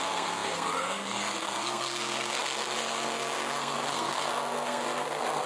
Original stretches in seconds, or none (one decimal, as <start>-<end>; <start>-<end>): none